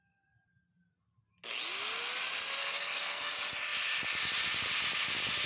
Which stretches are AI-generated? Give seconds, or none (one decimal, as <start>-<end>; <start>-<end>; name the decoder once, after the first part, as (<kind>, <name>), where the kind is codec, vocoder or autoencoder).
2.6-3.3 (codec, SNAC)